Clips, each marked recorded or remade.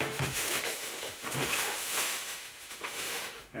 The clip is remade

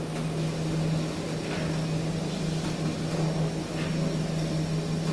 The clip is recorded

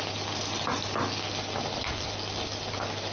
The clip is recorded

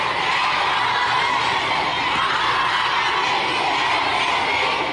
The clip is recorded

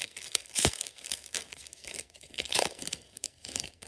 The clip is remade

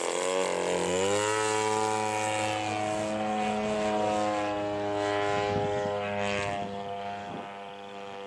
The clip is recorded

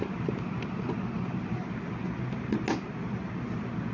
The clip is recorded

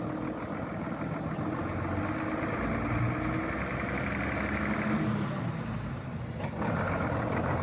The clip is recorded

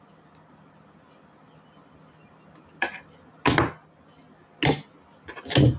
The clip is recorded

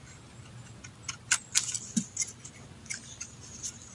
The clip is recorded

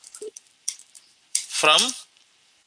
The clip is remade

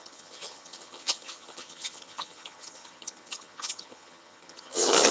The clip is remade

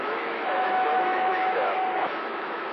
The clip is remade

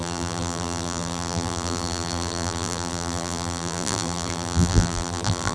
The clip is remade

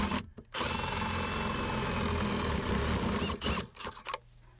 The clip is recorded